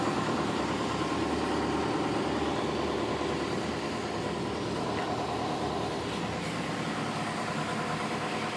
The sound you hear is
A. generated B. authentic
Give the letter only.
B